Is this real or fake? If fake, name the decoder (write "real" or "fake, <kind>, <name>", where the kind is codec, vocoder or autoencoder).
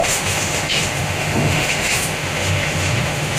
fake, autoencoder, DAC-VAE